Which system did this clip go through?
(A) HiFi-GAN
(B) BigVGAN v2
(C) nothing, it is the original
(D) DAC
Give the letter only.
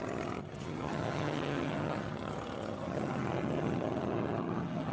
A